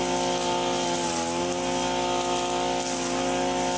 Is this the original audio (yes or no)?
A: yes